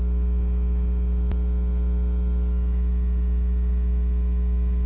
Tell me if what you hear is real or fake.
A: real